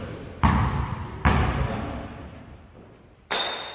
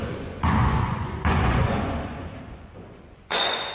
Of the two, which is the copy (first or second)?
second